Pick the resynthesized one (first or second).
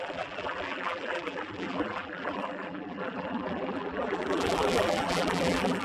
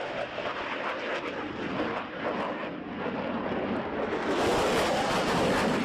first